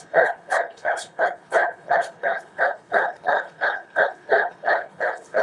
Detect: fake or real fake